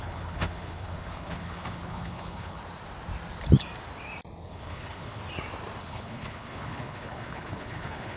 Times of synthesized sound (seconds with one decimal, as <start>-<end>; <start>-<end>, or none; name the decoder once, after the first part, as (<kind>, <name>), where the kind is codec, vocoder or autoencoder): 0.0-2.6 (codec, HILCodec); 4.5-5.2; 5.8-8.2